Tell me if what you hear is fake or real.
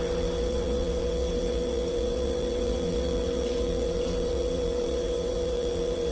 fake